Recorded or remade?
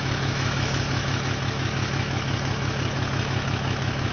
remade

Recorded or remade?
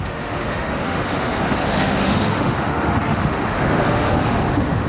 remade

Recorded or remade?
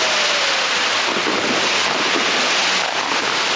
recorded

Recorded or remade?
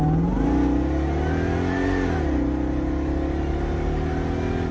recorded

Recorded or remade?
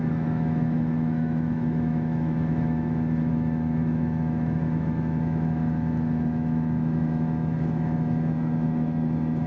remade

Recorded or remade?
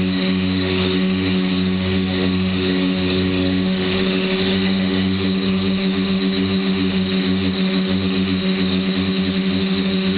remade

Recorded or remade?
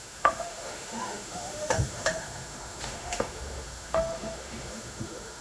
remade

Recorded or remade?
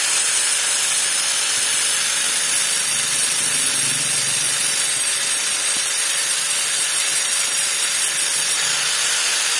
recorded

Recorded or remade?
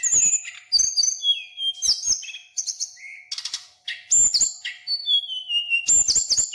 recorded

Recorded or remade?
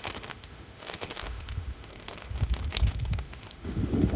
remade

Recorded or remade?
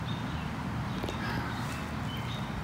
recorded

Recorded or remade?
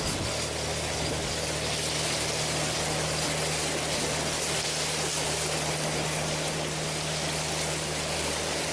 recorded